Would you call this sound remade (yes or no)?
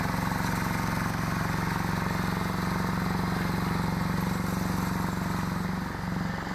no